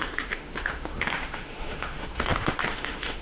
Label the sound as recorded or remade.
remade